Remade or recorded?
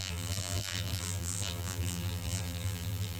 remade